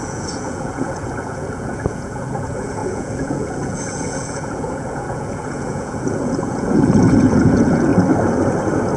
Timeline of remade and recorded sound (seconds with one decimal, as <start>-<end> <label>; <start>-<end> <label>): 0.0-7.9 remade; 7.9-9.0 recorded